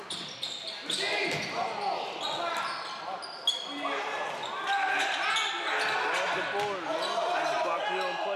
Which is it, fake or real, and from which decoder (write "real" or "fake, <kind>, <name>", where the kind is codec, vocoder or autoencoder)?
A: real